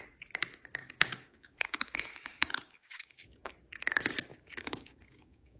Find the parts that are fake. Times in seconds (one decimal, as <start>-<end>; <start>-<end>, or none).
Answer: 0.8-3.5; 4.3-5.6